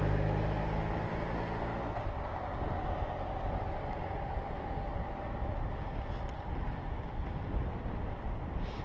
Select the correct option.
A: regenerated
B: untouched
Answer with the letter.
B